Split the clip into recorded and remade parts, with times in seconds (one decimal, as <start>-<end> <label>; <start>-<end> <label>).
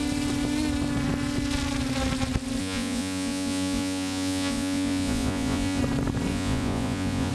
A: 0.0-2.6 recorded; 2.6-5.8 remade; 5.8-6.3 recorded; 6.3-7.3 remade